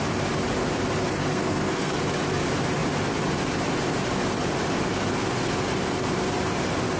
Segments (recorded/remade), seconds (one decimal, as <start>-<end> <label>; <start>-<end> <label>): 0.0-1.2 recorded; 1.2-1.9 remade; 1.9-7.0 recorded